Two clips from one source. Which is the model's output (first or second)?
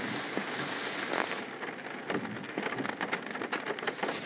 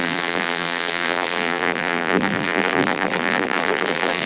second